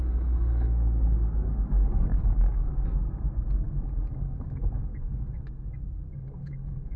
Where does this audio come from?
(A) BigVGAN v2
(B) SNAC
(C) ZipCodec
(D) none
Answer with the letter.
B